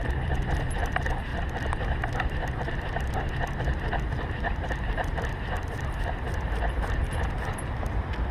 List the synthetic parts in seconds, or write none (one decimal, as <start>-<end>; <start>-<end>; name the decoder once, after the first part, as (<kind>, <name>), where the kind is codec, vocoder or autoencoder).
0.0-8.3 (vocoder, BigVGAN v2)